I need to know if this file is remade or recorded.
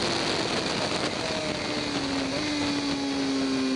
recorded